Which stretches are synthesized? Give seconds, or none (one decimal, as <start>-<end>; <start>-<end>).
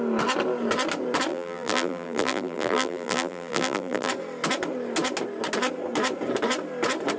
1.3-4.1